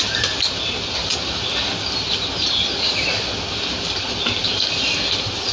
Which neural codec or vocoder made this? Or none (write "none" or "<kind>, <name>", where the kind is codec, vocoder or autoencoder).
none